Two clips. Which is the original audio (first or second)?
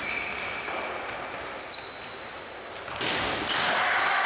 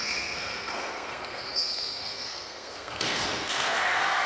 first